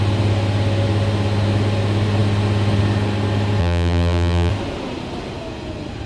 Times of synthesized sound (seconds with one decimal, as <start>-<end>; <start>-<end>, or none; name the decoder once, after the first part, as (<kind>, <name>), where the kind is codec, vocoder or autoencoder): 3.6-4.5 (vocoder, BigVGAN v2)